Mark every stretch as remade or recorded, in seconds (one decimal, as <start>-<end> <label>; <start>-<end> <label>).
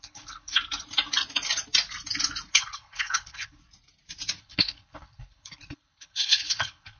0.0-0.6 remade; 0.6-2.5 recorded; 2.5-3.6 remade; 3.6-4.4 recorded; 4.4-7.0 remade